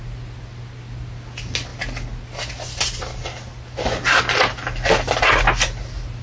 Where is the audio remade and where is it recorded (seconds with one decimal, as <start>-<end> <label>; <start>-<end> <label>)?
0.0-6.2 recorded